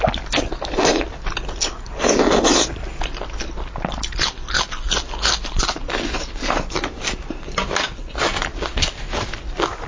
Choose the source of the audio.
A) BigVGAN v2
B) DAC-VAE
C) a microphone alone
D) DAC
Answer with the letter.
C